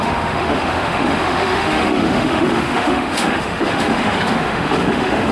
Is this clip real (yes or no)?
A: no